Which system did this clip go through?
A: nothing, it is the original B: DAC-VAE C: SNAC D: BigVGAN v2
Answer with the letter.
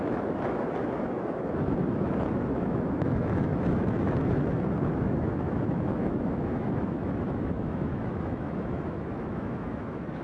B